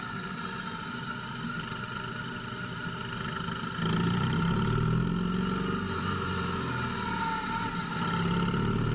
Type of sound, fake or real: real